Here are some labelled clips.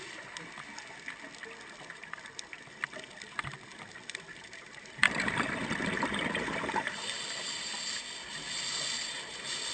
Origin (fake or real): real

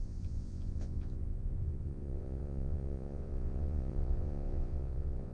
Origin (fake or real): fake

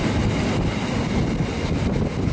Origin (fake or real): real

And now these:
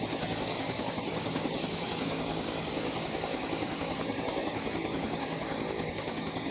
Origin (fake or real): fake